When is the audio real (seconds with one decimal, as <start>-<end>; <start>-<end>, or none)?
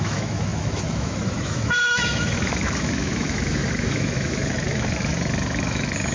none